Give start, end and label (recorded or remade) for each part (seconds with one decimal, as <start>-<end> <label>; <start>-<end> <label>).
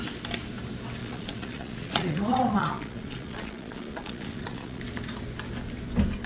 0.0-1.0 recorded; 1.0-4.8 remade; 4.8-6.3 recorded